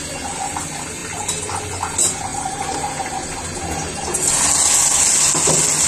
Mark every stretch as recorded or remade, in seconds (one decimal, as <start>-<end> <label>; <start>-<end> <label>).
0.0-2.3 recorded; 2.3-4.3 remade; 4.3-5.9 recorded